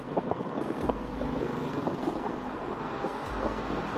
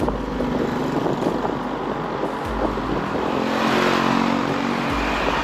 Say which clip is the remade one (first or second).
first